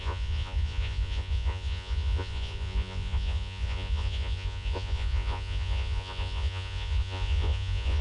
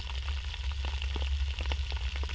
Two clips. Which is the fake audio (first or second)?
first